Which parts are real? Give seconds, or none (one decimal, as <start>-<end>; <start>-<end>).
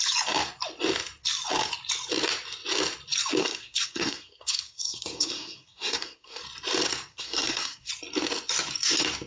0.0-3.4; 6.4-7.1; 7.9-9.3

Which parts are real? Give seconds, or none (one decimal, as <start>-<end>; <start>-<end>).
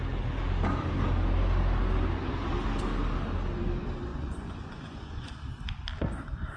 0.0-4.1; 5.3-6.6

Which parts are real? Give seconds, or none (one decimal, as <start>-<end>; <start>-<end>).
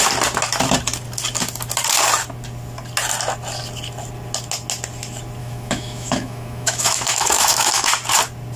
0.0-5.4; 7.9-8.6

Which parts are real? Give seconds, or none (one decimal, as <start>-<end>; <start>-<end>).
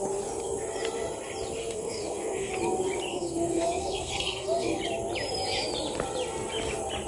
0.0-1.6; 2.5-3.1; 4.8-7.1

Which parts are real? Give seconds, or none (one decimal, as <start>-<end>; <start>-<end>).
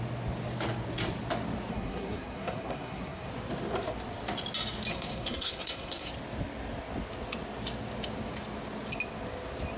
0.0-1.7; 3.3-4.9; 6.1-9.8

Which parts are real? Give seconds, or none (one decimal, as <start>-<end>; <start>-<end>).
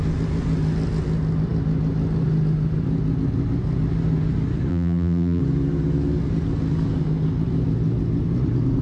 0.0-4.7; 5.4-8.8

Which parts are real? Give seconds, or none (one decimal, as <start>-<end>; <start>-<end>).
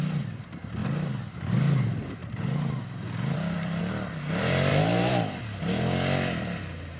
0.0-2.2; 3.8-4.7; 5.4-7.0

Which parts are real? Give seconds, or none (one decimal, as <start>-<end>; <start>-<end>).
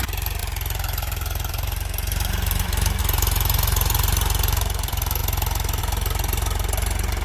5.2-5.8